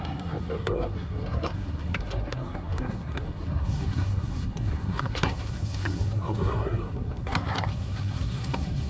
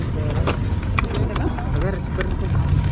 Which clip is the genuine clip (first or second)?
second